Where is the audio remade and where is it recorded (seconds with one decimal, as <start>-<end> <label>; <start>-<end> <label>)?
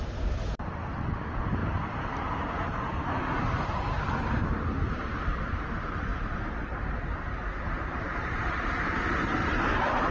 0.0-1.6 recorded; 1.6-3.1 remade; 3.1-5.3 recorded; 5.3-8.9 remade; 8.9-10.1 recorded